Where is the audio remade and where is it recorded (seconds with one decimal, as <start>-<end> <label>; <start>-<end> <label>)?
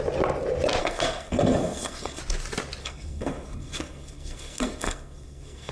0.0-0.8 recorded; 0.8-2.2 remade; 2.2-2.8 recorded; 2.8-5.7 remade